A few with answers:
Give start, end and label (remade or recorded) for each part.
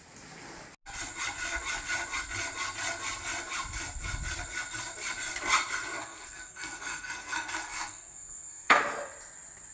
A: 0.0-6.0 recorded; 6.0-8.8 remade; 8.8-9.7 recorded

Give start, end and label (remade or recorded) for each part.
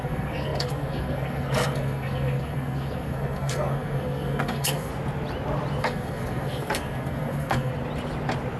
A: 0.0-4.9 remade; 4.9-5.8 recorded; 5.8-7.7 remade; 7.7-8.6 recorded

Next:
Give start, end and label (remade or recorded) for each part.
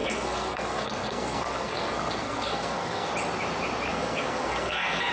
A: 0.0-3.1 remade; 3.1-3.9 recorded; 3.9-5.1 remade